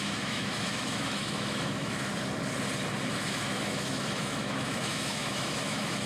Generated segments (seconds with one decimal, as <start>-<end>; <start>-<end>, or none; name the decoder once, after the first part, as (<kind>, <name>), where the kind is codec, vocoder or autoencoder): 0.0-2.1 (autoencoder, DAC-VAE); 3.1-6.1